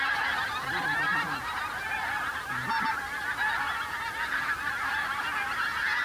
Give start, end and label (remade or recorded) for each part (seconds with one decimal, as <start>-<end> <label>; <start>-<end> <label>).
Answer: 0.0-6.0 recorded